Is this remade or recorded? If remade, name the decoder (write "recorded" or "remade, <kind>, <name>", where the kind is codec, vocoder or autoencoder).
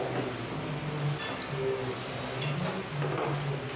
recorded